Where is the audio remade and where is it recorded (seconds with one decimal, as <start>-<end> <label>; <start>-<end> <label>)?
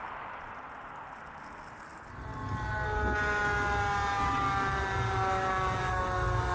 0.0-6.5 recorded